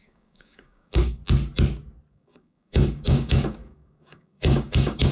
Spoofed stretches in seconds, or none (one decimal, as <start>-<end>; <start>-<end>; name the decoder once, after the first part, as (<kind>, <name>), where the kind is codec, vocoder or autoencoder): 0.0-1.2 (codec, DAC); 2.1-5.1